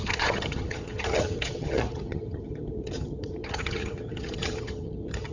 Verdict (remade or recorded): remade